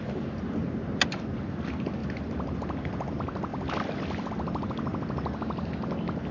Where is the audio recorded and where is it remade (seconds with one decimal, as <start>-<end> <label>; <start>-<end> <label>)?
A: 0.0-2.0 recorded; 2.0-3.1 remade; 3.1-3.5 recorded; 3.5-4.3 remade; 4.3-6.3 recorded